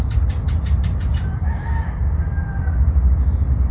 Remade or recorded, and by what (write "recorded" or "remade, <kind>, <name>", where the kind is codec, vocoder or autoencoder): recorded